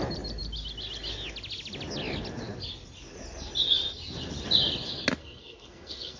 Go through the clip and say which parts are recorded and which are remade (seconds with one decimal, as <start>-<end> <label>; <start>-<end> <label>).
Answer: 0.0-5.2 recorded; 5.2-6.2 remade